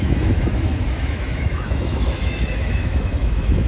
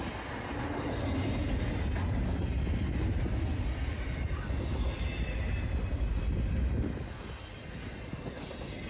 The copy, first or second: first